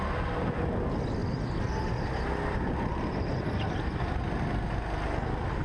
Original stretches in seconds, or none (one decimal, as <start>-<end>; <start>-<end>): 0.0-5.6